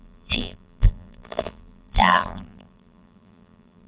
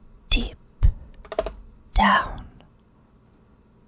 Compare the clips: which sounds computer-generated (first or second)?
first